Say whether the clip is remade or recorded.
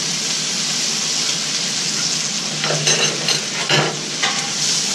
recorded